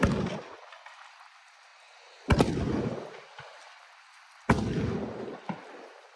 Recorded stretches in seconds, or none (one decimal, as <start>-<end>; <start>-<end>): 0.0-6.2